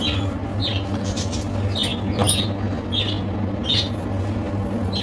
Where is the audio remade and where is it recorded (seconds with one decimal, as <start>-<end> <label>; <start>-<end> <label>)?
0.0-0.6 recorded; 0.6-1.2 remade; 1.2-5.0 recorded